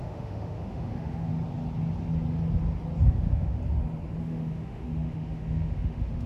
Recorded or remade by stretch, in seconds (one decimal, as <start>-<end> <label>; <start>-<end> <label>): 0.0-1.3 remade; 1.3-3.1 recorded; 3.1-3.6 remade; 3.6-4.2 recorded; 4.2-6.3 remade